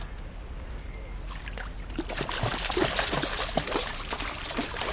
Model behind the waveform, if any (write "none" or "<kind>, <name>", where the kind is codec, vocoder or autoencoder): none